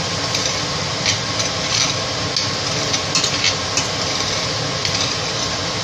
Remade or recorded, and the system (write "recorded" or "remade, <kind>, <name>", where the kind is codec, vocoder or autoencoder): recorded